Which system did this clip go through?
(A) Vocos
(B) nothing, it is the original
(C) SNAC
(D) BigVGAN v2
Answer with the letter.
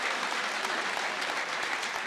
D